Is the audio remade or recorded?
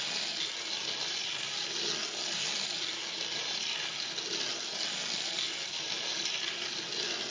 recorded